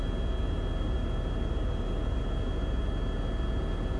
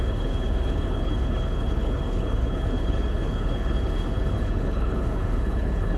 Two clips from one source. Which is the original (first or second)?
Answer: first